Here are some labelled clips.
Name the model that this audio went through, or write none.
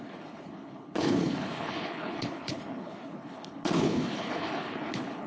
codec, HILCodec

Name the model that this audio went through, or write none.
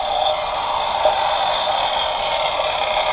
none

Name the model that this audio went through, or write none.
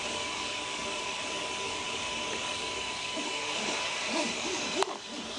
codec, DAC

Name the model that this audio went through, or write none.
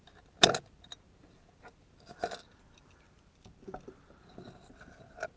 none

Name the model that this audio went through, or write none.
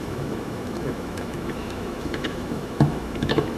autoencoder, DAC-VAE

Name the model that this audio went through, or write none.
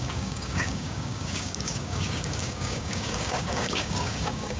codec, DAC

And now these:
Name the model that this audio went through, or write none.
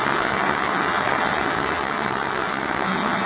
vocoder, WaveNeXt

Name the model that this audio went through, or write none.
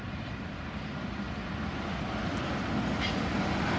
vocoder, BigVGAN v2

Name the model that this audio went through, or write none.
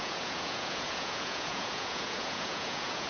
vocoder, Vocos